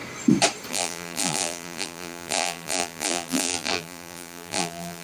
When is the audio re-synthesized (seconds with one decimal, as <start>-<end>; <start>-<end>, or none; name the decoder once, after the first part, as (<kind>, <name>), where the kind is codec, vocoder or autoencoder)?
0.7-5.0 (vocoder, BigVGAN v2)